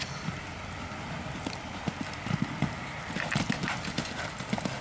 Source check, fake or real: real